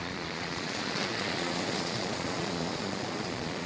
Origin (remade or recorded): remade